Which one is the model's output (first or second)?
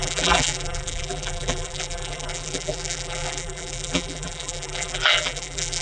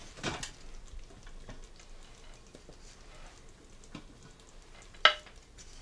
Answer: first